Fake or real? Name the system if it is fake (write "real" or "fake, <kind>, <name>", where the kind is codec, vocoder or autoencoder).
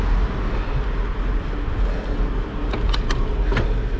real